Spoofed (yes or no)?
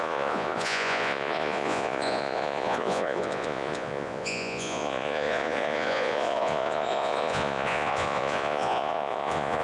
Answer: yes